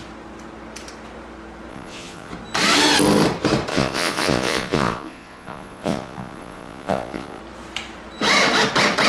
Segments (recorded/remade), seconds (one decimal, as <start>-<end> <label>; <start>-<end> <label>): 0.0-1.7 recorded; 1.7-2.3 remade; 2.3-3.7 recorded; 3.7-7.4 remade; 7.4-9.1 recorded